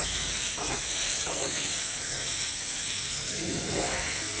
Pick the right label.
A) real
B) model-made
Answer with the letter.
B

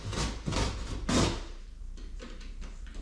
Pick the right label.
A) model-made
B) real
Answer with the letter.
B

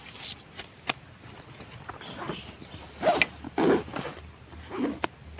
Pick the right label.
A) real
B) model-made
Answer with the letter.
A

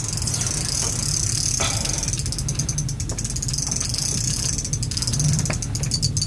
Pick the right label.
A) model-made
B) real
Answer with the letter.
B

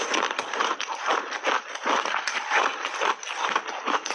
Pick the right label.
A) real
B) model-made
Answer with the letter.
A